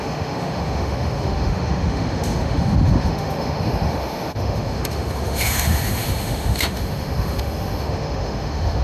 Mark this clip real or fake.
fake